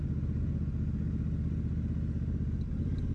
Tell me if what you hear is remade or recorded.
recorded